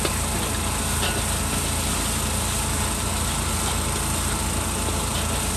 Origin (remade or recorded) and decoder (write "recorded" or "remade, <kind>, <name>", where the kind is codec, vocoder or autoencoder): recorded